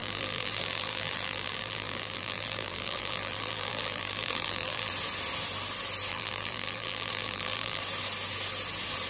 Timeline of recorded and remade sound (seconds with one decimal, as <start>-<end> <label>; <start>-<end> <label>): 0.0-4.9 remade; 4.9-6.1 recorded; 6.1-7.8 remade; 7.8-9.1 recorded